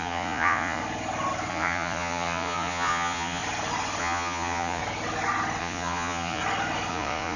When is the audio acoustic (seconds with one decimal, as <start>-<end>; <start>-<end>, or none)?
0.8-1.5; 3.4-4.0; 4.8-5.6; 6.4-6.9